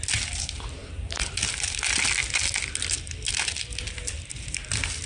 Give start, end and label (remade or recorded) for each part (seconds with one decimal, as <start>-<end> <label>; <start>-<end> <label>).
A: 0.0-5.1 recorded